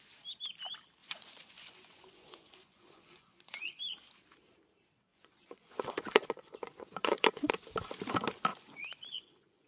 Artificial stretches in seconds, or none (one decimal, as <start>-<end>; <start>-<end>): 1.0-3.8; 5.1-7.5; 8.5-9.7